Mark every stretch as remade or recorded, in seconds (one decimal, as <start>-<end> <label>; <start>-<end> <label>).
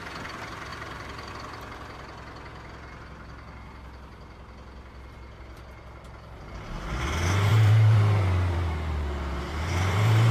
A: 0.0-0.7 recorded; 0.7-1.3 remade; 1.3-7.5 recorded; 7.5-10.3 remade